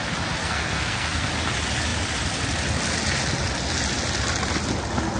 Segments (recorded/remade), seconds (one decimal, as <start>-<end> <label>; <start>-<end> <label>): 0.0-0.4 recorded; 0.4-1.3 remade; 1.3-5.2 recorded